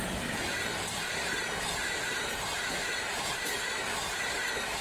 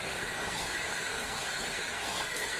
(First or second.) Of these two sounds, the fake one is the second